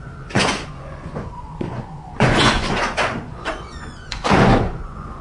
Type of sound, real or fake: fake